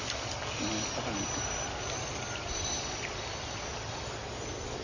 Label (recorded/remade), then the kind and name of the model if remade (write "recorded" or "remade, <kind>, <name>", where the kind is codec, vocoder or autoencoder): recorded